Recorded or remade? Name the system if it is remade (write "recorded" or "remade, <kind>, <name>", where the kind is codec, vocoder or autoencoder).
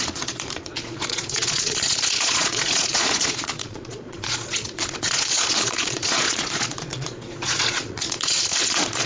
remade, vocoder, Vocos